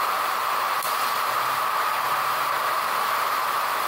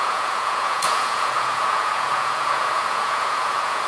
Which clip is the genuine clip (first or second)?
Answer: first